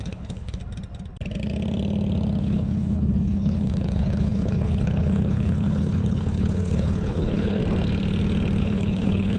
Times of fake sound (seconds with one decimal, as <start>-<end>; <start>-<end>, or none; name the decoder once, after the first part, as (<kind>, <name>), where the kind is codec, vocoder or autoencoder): 0.0-0.6 (codec, HILCodec); 2.4-7.6; 8.6-9.4